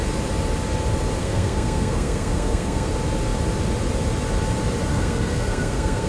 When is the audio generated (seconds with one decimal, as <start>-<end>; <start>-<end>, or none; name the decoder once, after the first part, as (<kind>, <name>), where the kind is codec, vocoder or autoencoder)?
1.2-2.9 (codec, SNAC); 4.9-6.1